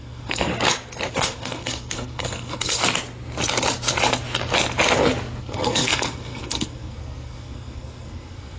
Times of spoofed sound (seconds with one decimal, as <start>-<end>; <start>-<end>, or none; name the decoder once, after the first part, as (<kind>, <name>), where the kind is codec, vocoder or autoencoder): 0.0-0.5 (codec, SNAC); 1.1-2.8; 5.4-8.6